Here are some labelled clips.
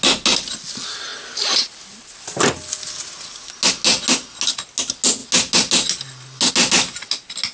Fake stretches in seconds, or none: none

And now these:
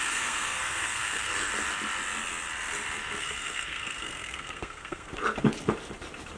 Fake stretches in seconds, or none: 0.0-1.5 (codec, SNAC); 3.2-5.1